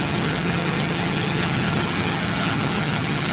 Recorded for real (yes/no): no